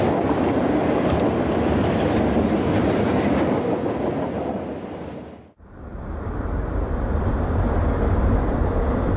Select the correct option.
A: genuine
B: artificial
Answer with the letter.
A